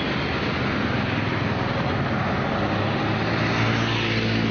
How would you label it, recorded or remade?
recorded